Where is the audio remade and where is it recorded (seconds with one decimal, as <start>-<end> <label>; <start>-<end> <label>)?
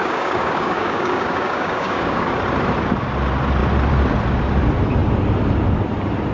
0.0-2.3 remade; 2.3-6.3 recorded